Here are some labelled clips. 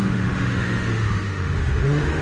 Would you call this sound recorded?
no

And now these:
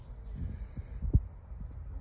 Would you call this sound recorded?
yes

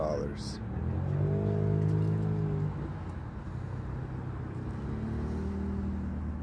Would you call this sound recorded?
yes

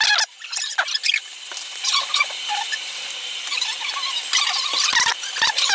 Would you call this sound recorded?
yes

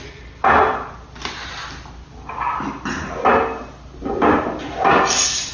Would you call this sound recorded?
yes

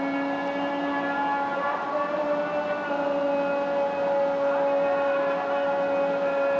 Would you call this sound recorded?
yes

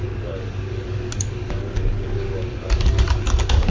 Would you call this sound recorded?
no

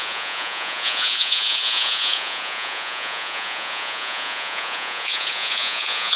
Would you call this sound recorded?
no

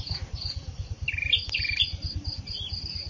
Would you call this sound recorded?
yes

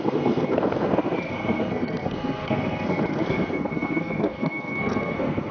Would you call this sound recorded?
no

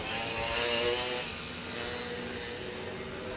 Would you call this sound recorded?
yes